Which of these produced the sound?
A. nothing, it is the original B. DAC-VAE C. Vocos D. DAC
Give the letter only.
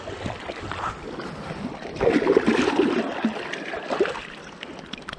A